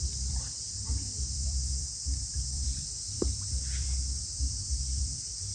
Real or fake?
fake